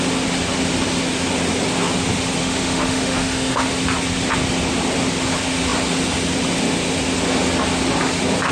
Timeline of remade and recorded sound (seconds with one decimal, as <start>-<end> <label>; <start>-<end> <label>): 0.0-2.4 recorded; 2.4-3.7 remade; 3.7-8.5 recorded